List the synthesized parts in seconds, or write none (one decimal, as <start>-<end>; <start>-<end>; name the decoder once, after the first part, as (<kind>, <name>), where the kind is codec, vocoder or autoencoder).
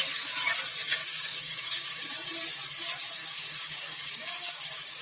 1.0-2.1 (codec, DAC); 3.2-5.0